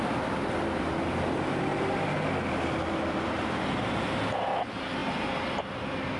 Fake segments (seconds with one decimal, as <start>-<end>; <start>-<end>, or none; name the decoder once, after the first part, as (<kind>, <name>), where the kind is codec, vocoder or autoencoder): none